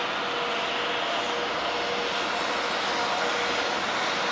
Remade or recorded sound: recorded